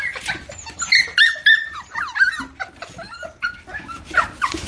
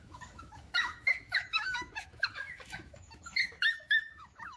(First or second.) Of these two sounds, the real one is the first